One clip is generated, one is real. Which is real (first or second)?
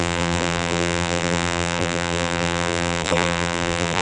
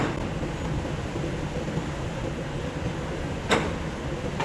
second